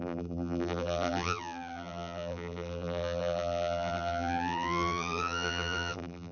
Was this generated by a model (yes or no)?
yes